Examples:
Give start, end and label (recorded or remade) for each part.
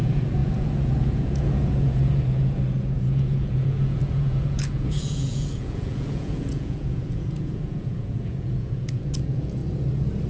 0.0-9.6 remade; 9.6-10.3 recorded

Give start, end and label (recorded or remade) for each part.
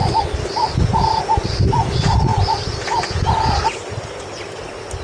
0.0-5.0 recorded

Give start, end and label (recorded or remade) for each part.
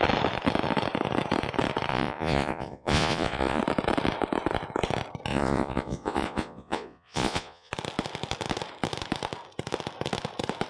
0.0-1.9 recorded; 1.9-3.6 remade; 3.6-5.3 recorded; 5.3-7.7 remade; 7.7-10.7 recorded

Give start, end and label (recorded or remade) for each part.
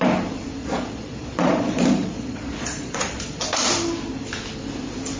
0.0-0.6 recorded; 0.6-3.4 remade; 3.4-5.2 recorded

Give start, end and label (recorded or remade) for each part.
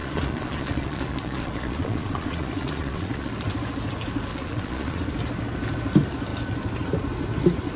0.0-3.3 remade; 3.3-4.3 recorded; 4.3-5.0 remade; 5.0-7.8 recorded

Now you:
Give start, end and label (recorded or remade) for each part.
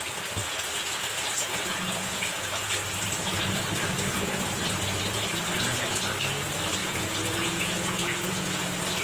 0.0-0.4 recorded; 0.4-2.7 remade; 2.7-6.8 recorded; 6.8-8.6 remade; 8.6-9.0 recorded